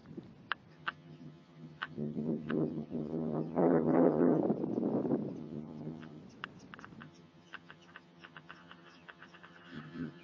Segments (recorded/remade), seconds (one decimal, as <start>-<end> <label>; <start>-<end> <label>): 0.0-0.7 recorded; 0.7-4.4 remade; 4.4-5.4 recorded; 5.4-6.2 remade; 6.2-7.0 recorded; 7.0-10.2 remade